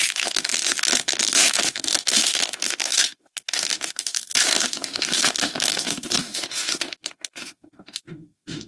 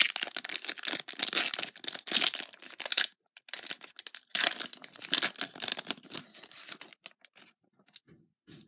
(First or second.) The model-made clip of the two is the first